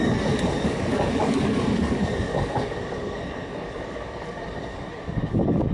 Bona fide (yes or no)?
no